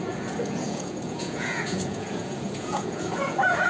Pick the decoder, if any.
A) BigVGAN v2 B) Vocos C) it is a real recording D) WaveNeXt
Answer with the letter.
B